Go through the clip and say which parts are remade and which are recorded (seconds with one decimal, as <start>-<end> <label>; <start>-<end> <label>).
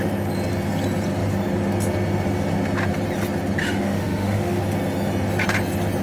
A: 0.0-3.6 recorded; 3.6-4.6 remade; 4.6-6.0 recorded